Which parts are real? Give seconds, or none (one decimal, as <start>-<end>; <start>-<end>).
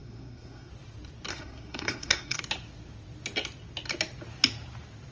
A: 0.7-1.3; 2.4-5.1